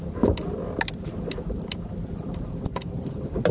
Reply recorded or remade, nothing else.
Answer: recorded